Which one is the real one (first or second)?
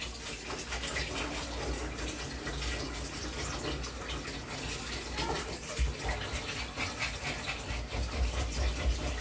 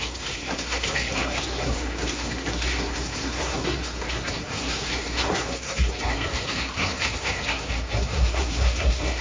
first